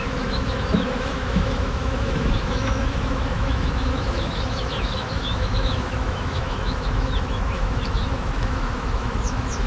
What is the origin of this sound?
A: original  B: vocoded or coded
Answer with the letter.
B